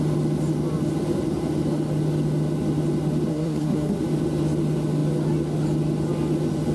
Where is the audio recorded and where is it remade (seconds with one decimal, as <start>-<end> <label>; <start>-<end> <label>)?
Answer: 0.0-3.3 recorded; 3.3-4.0 remade; 4.0-6.7 recorded

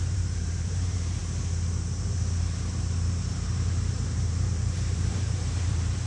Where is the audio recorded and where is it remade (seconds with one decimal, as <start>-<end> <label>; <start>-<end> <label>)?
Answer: 0.0-1.2 remade; 1.2-3.9 recorded; 3.9-6.1 remade

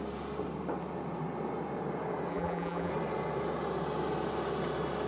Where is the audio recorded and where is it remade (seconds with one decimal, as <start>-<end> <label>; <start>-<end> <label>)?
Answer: 0.0-2.3 recorded; 2.3-2.9 remade; 2.9-5.1 recorded

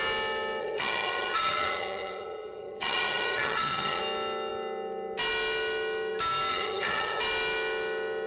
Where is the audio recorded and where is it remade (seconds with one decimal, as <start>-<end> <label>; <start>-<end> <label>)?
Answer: 0.0-0.6 recorded; 0.6-4.0 remade; 4.0-6.5 recorded; 6.5-7.2 remade; 7.2-8.3 recorded

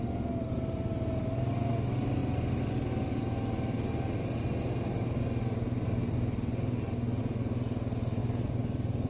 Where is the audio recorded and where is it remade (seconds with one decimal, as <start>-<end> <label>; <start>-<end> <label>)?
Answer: 0.0-9.1 recorded

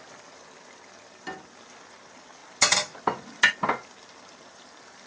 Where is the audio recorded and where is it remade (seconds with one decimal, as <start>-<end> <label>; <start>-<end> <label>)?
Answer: 0.0-5.1 recorded

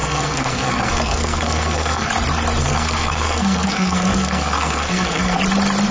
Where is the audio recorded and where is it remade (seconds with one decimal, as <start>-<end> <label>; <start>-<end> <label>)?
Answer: 0.0-2.1 remade; 2.1-2.6 recorded; 2.6-5.4 remade; 5.4-5.9 recorded

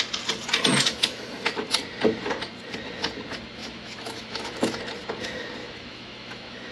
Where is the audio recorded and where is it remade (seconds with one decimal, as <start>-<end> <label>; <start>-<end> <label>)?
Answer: 0.0-0.7 recorded; 0.7-1.3 remade; 1.3-3.6 recorded; 3.6-4.8 remade; 4.8-5.6 recorded; 5.6-6.7 remade